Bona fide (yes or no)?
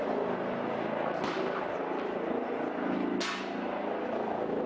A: yes